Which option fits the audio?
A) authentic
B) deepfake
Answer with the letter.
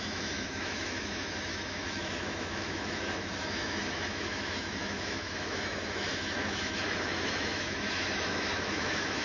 B